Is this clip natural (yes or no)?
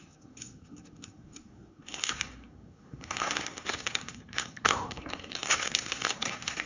no